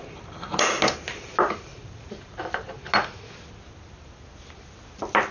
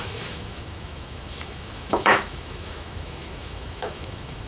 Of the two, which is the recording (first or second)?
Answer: first